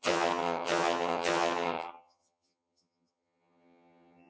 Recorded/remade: remade